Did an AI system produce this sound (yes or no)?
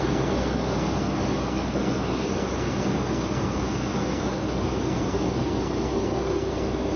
yes